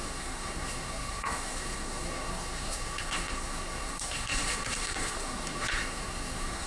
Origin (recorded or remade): remade